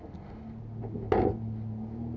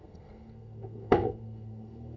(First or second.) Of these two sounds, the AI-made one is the second